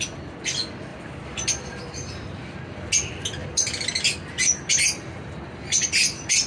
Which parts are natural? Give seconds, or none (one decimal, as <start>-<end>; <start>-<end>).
0.0-0.9; 2.6-3.4; 3.9-6.5